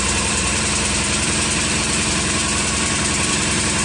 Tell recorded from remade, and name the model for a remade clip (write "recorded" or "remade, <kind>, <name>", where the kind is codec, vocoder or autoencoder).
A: remade, vocoder, BigVGAN v2